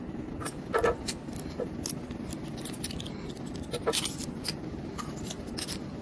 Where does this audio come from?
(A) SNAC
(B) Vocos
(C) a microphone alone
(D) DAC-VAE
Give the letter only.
C